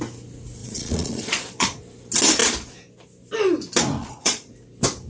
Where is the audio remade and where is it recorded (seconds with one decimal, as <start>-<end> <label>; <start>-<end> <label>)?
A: 0.0-0.6 recorded; 0.6-1.8 remade; 1.8-4.0 recorded; 4.0-4.5 remade; 4.5-5.1 recorded